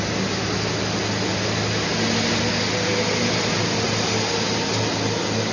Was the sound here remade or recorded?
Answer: recorded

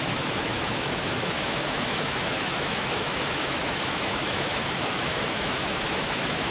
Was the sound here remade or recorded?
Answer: remade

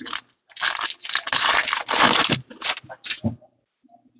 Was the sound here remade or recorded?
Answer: recorded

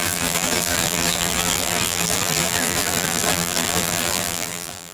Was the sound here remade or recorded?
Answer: remade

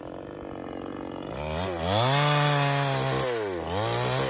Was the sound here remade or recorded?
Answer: recorded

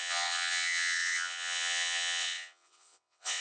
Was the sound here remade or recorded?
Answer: remade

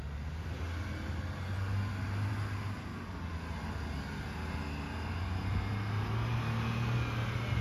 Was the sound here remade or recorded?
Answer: recorded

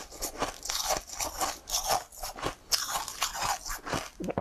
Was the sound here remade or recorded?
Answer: recorded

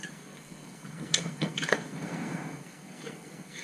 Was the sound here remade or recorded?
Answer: remade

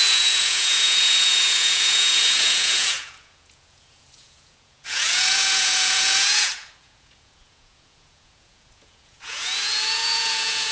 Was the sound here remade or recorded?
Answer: remade